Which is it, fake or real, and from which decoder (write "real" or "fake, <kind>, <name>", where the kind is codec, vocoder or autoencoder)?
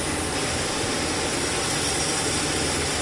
real